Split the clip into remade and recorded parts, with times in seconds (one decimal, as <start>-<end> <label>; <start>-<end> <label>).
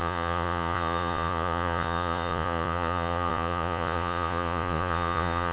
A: 0.0-5.5 remade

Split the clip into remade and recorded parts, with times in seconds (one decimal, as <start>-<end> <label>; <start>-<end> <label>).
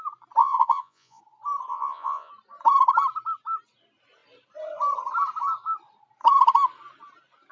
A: 0.0-0.4 recorded; 0.4-1.2 remade; 1.2-1.7 recorded; 1.7-2.3 remade; 2.3-7.5 recorded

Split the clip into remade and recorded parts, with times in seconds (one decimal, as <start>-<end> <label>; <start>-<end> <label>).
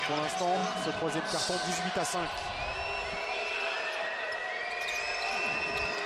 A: 0.0-6.1 recorded